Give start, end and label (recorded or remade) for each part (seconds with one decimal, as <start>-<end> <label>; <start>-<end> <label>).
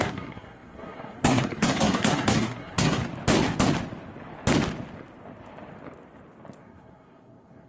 0.0-3.0 remade; 3.0-6.6 recorded; 6.6-7.7 remade